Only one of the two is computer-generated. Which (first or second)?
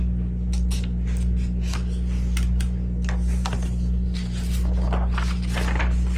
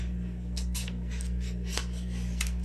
second